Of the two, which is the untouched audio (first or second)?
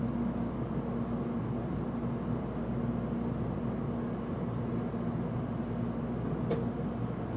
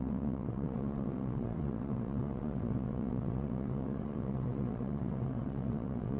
first